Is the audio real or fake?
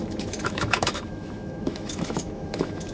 fake